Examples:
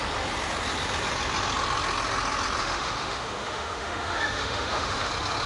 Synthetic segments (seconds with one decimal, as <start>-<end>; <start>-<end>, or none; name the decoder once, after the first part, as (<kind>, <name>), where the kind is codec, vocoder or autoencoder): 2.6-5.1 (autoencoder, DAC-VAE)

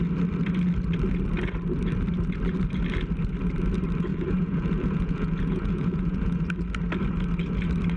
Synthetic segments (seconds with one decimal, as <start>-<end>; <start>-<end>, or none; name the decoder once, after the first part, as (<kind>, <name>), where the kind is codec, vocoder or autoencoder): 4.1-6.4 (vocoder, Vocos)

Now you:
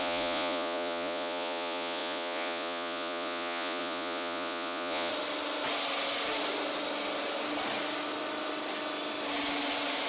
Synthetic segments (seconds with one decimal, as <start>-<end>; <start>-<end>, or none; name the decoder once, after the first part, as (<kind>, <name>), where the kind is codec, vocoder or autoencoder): 0.0-5.1 (vocoder, Vocos)

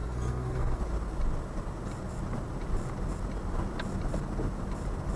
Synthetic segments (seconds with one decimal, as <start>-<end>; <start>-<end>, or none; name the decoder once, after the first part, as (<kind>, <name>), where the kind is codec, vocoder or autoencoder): 0.0-0.8 (codec, SNAC)